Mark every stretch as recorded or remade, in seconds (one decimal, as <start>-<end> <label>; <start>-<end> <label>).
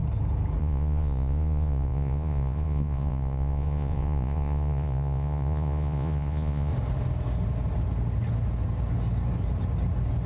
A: 0.0-0.6 recorded; 0.6-6.7 remade; 6.7-10.3 recorded